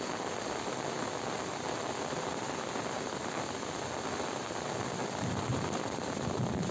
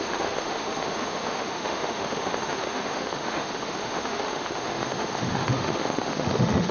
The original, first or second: first